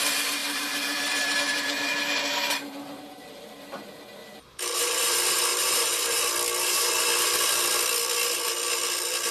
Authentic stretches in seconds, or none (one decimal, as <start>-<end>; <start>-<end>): 0.0-0.4; 3.5-4.2; 5.1-5.5; 6.2-9.3